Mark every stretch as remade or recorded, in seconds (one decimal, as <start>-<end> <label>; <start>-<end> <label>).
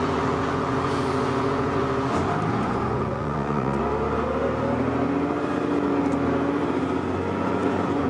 0.0-1.8 remade; 1.8-2.5 recorded; 2.5-3.8 remade; 3.8-7.4 recorded; 7.4-8.1 remade